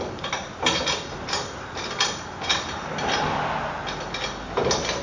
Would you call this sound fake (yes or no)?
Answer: no